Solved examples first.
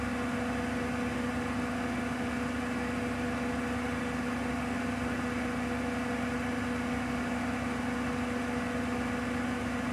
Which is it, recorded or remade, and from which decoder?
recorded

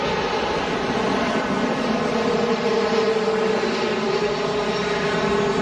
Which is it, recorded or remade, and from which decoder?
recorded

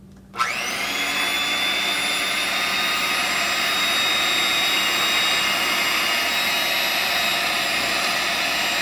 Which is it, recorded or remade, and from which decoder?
recorded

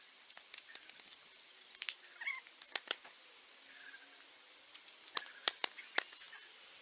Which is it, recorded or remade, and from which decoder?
recorded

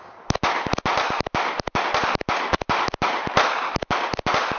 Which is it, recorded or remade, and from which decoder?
recorded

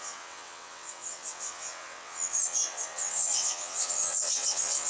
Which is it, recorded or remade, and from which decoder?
remade, vocoder, WaveNeXt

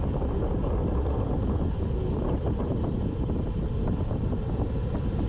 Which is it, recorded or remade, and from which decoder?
recorded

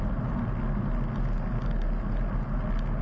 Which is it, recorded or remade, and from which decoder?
recorded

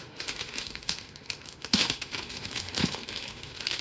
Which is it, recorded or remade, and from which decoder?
remade, autoencoder, DAC-VAE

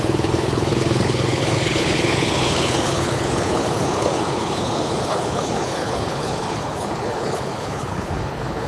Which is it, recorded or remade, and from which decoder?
remade, codec, HILCodec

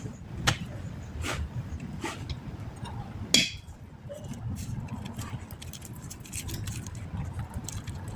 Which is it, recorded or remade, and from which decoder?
recorded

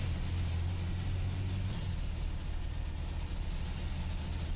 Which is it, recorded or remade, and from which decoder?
recorded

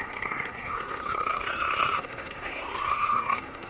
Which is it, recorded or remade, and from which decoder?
remade, codec, SNAC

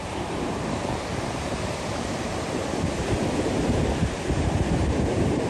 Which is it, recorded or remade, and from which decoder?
remade, vocoder, BigVGAN v2